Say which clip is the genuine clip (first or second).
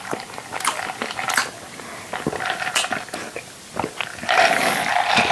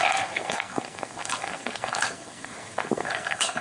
first